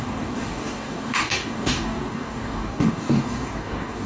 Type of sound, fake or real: fake